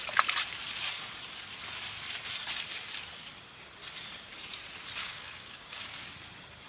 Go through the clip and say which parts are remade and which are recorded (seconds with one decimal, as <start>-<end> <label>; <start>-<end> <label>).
0.0-5.0 recorded; 5.0-5.8 remade; 5.8-6.7 recorded